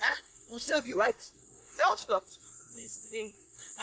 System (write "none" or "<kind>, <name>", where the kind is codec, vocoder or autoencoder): codec, SNAC